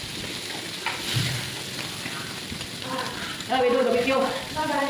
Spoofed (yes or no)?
no